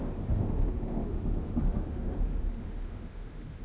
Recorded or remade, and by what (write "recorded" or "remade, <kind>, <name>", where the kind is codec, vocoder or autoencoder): remade, autoencoder, DAC-VAE